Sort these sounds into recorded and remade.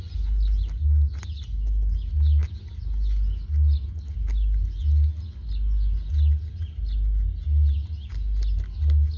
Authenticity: recorded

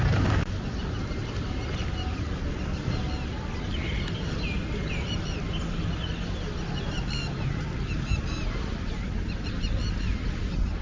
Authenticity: recorded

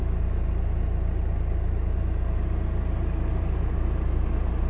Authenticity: recorded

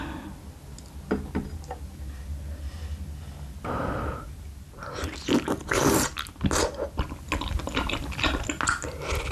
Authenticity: recorded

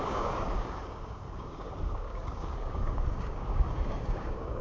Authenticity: remade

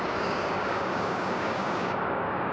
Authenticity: remade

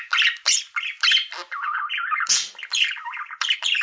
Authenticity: recorded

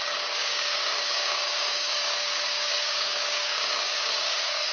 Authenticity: remade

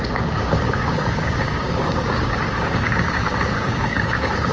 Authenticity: remade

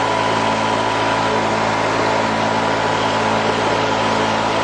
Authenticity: recorded